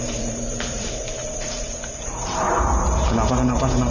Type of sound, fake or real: fake